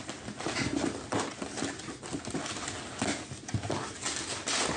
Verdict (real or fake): real